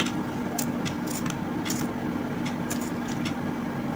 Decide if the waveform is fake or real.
real